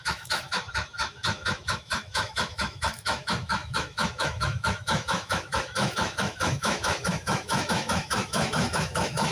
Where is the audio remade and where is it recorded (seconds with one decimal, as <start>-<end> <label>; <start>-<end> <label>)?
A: 0.0-9.3 remade